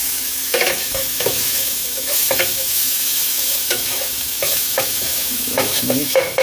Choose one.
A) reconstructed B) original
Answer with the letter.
A